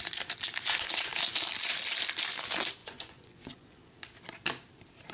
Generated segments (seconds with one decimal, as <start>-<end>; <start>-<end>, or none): 2.8-3.9